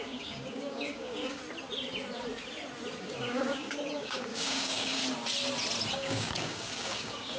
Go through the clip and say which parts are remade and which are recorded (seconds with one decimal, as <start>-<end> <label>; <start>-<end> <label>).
0.0-1.4 remade; 1.4-3.0 recorded; 3.0-5.0 remade; 5.0-5.9 recorded; 5.9-7.4 remade